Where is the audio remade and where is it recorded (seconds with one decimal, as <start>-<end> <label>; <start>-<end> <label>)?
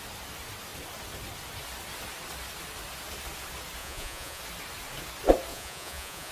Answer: 0.0-3.8 recorded; 3.8-4.4 remade; 4.4-5.5 recorded; 5.5-6.3 remade